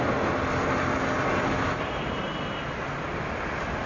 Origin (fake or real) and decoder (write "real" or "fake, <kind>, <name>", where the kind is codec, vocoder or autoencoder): real